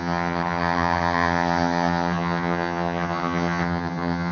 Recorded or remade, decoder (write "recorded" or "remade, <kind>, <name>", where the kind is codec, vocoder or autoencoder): remade, vocoder, HiFi-GAN